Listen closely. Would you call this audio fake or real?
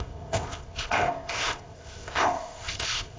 fake